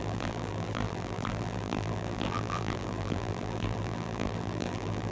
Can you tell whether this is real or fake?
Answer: fake